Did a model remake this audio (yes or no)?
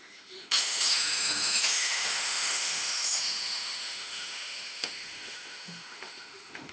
yes